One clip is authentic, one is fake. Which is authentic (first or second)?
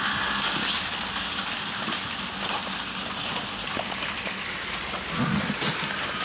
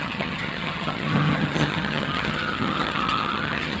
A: first